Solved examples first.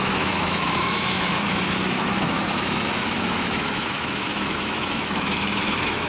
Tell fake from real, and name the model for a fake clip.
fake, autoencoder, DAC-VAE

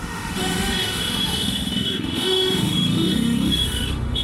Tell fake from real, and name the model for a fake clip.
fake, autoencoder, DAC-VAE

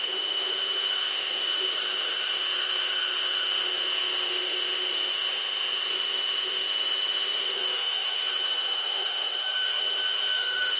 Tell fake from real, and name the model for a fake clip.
fake, autoencoder, DAC-VAE